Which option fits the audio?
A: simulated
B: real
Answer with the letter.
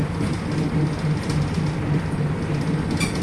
B